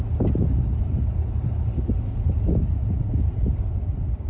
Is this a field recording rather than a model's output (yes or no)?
yes